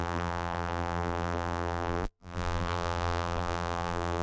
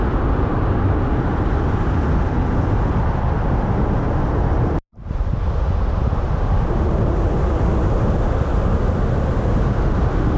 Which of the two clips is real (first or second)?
second